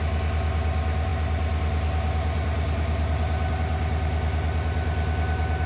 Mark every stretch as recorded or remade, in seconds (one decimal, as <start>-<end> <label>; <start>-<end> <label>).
0.0-5.7 recorded